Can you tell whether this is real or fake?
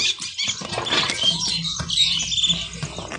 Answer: real